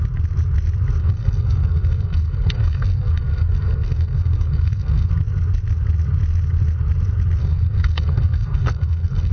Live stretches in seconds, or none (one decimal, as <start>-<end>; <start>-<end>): 0.0-1.0; 5.1-7.4